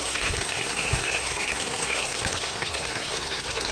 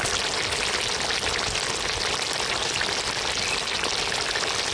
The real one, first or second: second